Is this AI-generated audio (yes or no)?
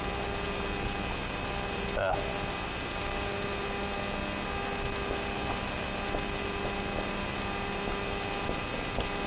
no